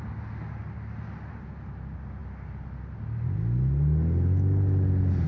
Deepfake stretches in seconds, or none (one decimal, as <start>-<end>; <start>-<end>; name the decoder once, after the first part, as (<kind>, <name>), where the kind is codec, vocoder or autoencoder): none

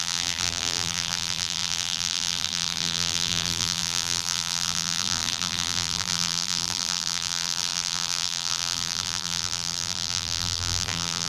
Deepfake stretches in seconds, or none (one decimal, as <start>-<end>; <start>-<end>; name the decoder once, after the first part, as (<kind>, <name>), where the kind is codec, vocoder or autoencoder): 0.0-11.3 (vocoder, BigVGAN v2)

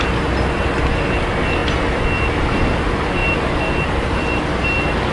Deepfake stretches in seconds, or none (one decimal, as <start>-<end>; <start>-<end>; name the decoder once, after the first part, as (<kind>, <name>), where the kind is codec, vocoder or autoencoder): none

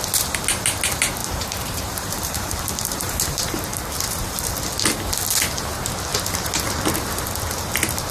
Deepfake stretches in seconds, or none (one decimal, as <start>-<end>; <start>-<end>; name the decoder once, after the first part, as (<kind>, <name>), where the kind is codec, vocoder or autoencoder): 1.2-4.5 (vocoder, BigVGAN v2)

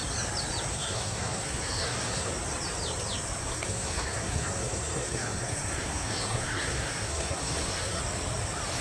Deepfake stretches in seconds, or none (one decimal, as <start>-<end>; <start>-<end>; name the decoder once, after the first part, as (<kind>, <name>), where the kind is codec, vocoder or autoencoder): 0.7-2.3 (codec, SNAC); 3.4-8.0

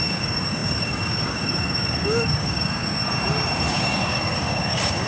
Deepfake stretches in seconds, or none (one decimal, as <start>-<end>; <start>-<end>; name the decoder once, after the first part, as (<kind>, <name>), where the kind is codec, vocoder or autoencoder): 0.0-3.0 (codec, DAC); 3.7-5.1

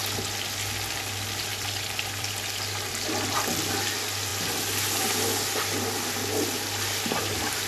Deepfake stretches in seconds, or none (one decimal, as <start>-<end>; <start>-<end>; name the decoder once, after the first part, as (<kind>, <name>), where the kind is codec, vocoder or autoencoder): 1.5-3.7 (vocoder, BigVGAN v2)

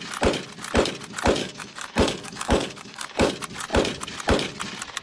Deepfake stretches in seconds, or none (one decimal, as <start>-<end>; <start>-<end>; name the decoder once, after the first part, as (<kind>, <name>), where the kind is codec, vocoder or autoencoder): 1.4-3.3 (codec, DAC)